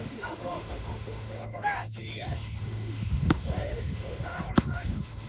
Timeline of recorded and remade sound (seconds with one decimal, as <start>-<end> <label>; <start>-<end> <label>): 0.0-5.3 remade